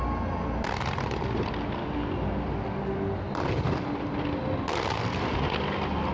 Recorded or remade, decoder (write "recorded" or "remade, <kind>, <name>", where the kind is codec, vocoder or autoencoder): recorded